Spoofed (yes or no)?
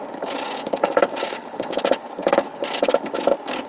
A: yes